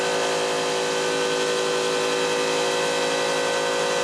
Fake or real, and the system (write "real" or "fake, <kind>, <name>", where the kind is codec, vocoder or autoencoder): real